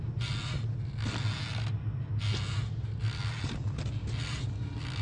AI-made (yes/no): no